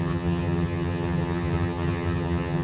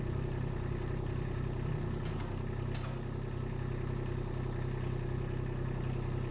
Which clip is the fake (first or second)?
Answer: first